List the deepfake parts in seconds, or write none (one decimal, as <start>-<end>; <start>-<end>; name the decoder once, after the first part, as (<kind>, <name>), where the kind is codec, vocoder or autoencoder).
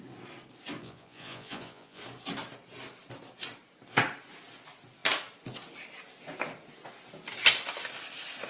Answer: 0.8-2.0 (vocoder, Vocos)